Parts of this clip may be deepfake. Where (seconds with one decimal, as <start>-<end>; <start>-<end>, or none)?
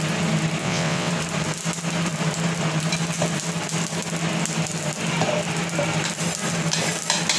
0.6-1.1